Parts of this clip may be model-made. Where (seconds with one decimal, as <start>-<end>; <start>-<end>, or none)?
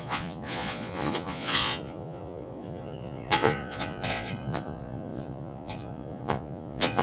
0.0-7.0